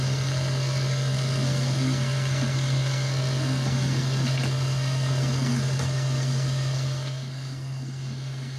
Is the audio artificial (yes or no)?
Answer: yes